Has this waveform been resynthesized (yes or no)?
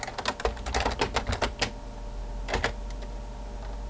no